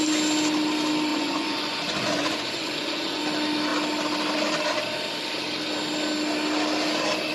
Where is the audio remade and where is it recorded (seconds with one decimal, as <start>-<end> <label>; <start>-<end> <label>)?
0.0-1.1 recorded; 1.1-3.2 remade; 3.2-7.3 recorded